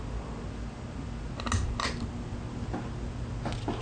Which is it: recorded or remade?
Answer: recorded